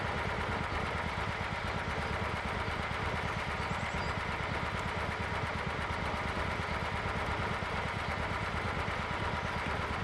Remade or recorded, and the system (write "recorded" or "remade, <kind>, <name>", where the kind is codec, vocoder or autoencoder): recorded